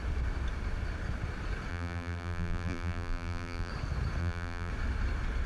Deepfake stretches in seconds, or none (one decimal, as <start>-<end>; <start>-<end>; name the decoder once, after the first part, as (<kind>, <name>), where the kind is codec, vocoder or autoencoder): 1.7-3.7 (vocoder, BigVGAN v2); 4.2-4.7